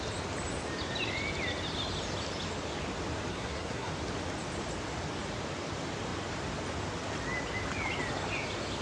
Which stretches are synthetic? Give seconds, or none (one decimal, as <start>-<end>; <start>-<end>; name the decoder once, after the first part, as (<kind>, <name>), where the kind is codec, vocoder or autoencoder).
3.3-3.9 (codec, SNAC)